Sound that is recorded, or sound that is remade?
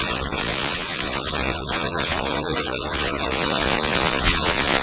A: remade